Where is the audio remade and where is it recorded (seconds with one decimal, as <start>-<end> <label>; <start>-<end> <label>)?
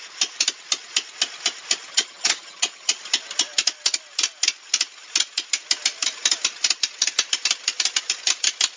0.0-1.9 recorded; 1.9-3.0 remade; 3.0-8.8 recorded